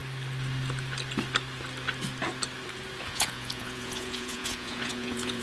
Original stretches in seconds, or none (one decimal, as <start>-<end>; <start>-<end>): 0.0-3.0

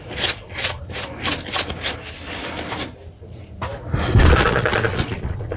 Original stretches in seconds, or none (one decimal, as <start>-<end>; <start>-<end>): 0.8-4.2

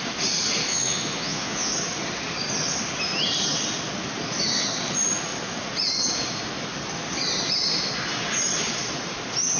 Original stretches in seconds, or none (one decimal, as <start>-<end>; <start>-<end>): 0.0-0.7; 1.7-9.6

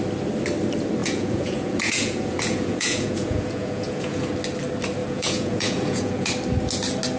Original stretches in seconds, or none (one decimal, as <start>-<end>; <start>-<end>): 0.0-1.0; 4.3-5.0; 6.3-7.2

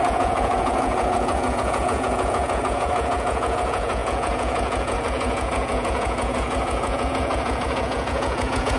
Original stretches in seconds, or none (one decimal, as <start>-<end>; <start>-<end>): none